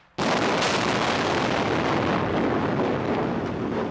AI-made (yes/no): no